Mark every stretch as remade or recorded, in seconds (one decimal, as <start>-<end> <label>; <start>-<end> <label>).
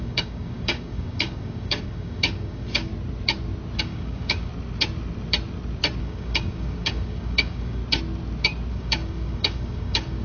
0.0-2.9 remade; 2.9-3.8 recorded; 3.8-4.5 remade; 4.5-6.0 recorded; 6.0-7.8 remade; 7.8-8.7 recorded; 8.7-10.2 remade